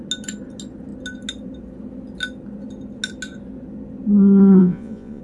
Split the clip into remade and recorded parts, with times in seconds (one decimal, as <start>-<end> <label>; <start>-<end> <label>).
0.0-4.6 recorded; 4.6-5.2 remade